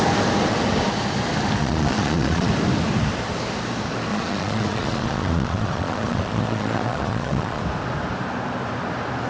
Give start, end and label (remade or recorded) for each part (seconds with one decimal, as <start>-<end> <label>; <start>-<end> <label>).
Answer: 0.0-1.6 recorded; 1.6-2.5 remade; 2.5-4.1 recorded; 4.1-7.6 remade; 7.6-9.3 recorded